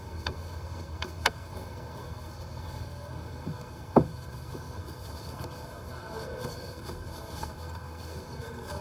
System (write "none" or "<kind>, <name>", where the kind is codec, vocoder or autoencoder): codec, SNAC